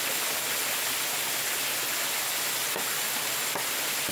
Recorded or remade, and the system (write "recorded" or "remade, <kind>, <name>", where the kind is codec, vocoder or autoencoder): recorded